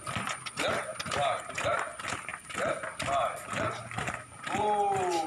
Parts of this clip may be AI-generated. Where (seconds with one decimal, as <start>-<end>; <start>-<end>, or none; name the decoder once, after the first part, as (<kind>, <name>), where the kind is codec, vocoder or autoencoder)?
0.9-1.4 (vocoder, BigVGAN v2); 2.3-5.3